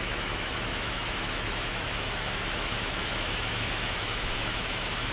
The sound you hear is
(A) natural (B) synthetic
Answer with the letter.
B